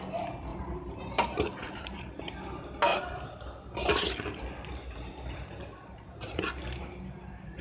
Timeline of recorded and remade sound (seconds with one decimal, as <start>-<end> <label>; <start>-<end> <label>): 0.0-0.5 recorded; 0.5-2.1 remade; 2.1-2.9 recorded; 2.9-6.4 remade; 6.4-7.6 recorded